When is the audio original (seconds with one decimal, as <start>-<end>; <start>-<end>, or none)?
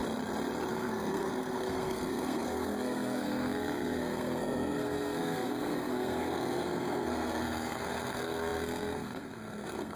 0.0-0.7